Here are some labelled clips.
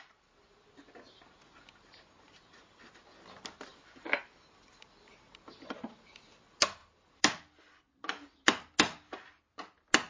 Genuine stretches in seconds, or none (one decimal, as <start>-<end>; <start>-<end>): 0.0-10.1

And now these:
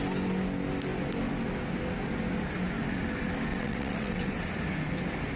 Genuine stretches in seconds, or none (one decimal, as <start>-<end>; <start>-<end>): 0.0-3.5; 4.4-5.4

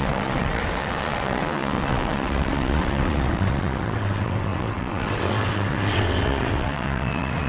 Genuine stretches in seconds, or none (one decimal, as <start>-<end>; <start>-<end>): none

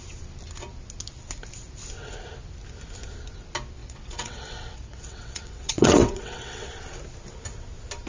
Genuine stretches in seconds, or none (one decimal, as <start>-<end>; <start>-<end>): 0.0-3.8; 6.7-8.1